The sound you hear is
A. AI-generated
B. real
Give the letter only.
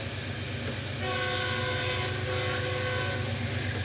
B